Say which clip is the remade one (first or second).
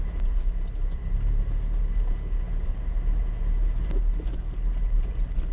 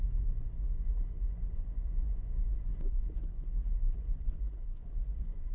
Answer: second